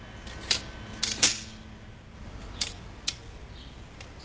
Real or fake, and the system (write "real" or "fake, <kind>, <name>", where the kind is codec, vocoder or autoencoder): real